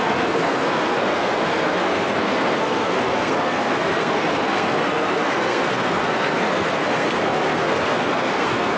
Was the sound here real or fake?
fake